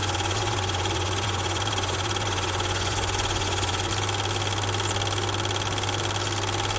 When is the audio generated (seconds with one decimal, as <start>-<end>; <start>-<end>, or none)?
0.0-3.9